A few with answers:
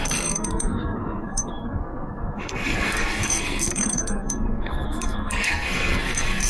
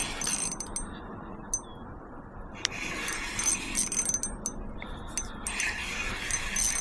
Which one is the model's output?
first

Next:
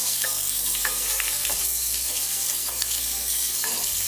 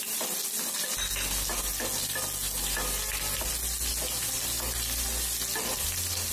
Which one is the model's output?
first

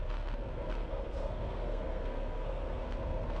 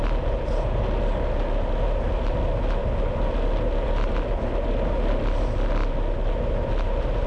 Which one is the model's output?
first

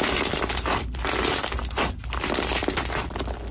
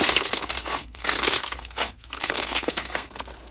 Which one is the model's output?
second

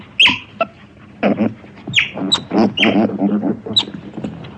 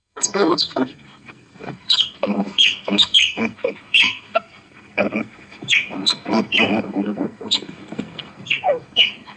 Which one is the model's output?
second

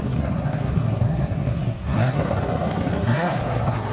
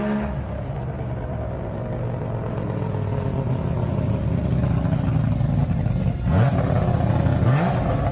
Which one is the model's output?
first